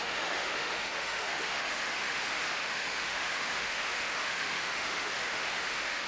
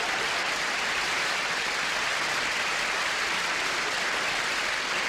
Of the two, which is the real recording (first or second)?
second